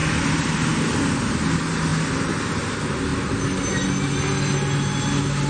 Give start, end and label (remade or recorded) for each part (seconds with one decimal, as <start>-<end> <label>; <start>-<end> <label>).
0.0-0.5 remade; 0.5-1.9 recorded; 1.9-2.6 remade; 2.6-5.5 recorded